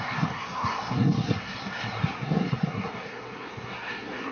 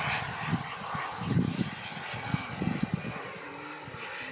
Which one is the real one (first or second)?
second